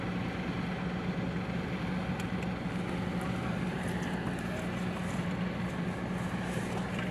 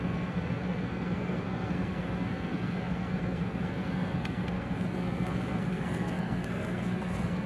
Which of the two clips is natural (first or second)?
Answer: first